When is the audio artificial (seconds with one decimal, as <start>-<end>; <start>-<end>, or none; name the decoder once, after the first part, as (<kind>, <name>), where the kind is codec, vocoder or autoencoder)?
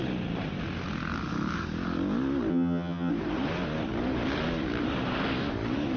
2.5-3.1 (vocoder, HiFi-GAN)